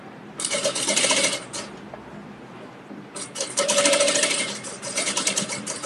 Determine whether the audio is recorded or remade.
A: remade